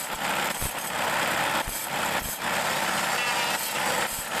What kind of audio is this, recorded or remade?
recorded